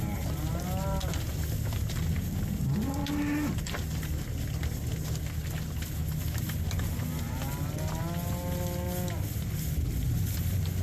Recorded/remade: recorded